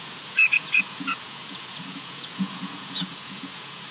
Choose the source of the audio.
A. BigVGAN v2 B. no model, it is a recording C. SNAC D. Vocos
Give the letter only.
D